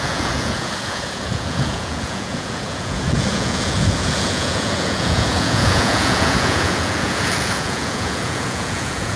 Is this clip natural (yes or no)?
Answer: no